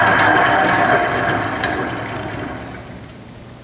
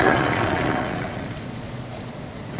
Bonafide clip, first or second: first